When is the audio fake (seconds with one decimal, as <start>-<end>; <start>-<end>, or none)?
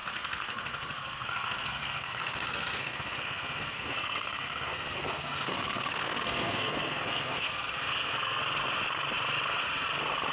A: 0.0-8.4